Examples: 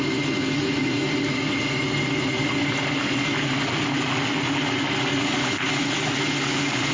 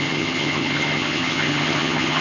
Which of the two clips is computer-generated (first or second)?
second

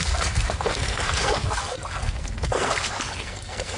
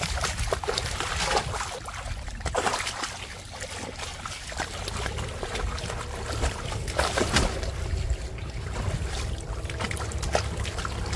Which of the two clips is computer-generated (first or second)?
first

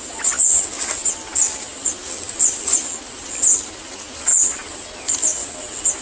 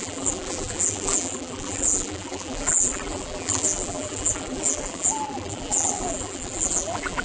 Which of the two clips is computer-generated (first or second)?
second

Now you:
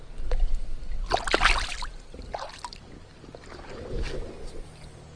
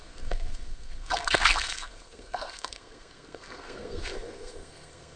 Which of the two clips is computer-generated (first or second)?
second